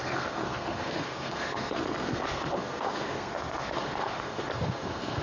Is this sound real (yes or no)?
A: no